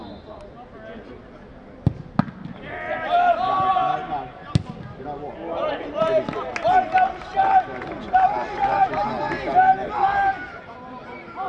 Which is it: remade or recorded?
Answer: recorded